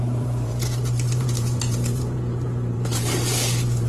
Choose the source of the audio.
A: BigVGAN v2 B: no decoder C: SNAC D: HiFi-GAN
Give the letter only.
A